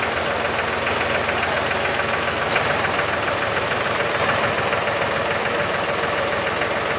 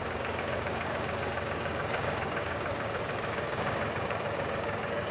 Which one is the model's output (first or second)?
second